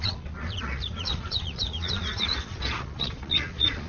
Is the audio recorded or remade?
remade